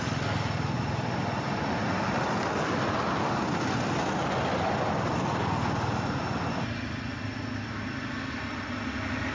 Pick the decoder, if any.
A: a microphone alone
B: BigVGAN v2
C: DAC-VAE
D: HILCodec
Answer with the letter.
A